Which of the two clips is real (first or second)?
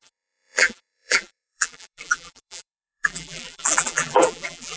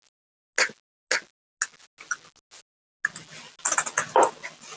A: second